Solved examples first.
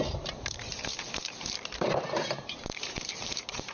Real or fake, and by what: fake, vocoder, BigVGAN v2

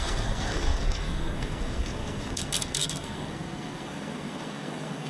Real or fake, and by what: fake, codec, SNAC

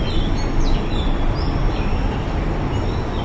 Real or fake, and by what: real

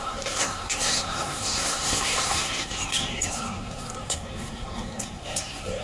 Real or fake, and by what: fake, codec, SNAC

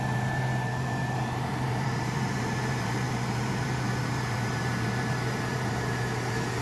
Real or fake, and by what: fake, vocoder, BigVGAN v2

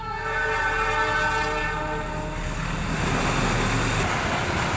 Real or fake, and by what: real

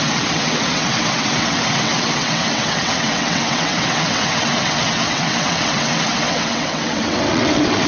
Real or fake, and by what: fake, vocoder, WaveNeXt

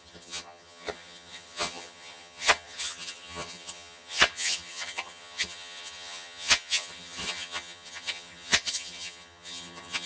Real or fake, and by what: fake, vocoder, HiFi-GAN